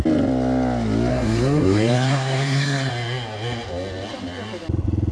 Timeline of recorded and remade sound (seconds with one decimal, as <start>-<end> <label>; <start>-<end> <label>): 0.0-1.1 recorded; 1.1-2.9 remade; 2.9-5.1 recorded